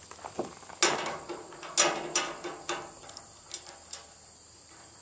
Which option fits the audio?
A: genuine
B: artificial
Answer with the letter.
A